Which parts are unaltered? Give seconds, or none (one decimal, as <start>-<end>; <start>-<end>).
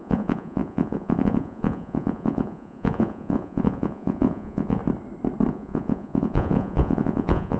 4.8-5.5